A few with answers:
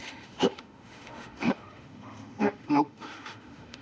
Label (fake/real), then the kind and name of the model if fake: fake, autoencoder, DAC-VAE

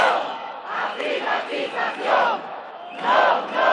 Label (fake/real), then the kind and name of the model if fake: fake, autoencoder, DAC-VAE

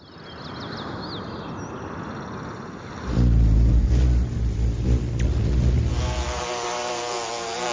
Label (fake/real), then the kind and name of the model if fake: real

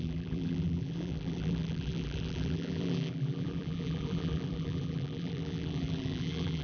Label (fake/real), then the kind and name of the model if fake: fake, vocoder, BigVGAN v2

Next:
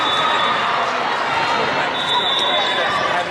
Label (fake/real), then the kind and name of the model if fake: real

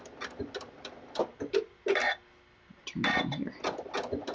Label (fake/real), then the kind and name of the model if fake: real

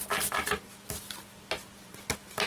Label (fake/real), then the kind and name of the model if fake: real